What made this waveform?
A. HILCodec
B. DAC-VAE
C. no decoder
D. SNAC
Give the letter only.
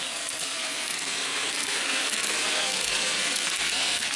D